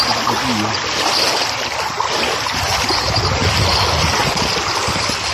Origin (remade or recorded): recorded